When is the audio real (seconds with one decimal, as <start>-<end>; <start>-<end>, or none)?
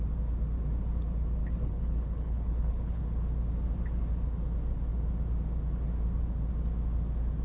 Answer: 0.0-1.4; 3.0-7.4